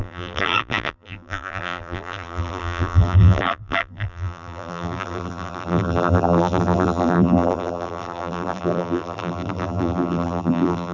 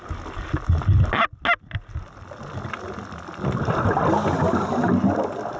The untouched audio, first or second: second